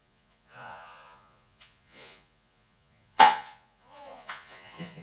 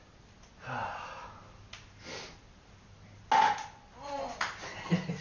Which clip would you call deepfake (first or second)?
first